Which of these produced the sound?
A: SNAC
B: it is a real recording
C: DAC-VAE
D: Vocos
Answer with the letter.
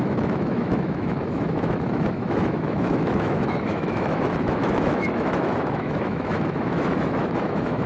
C